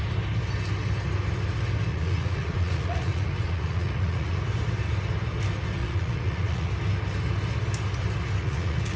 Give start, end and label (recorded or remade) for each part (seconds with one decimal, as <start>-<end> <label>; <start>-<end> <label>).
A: 0.0-1.9 recorded; 1.9-4.4 remade; 4.4-5.8 recorded; 5.8-6.7 remade; 6.7-8.4 recorded; 8.4-9.0 remade